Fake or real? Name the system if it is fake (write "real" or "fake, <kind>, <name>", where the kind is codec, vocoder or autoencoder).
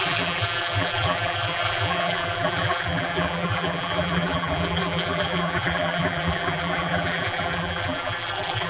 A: fake, vocoder, BigVGAN v2